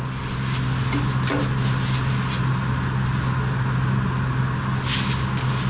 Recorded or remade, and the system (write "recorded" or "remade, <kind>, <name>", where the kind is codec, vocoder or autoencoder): recorded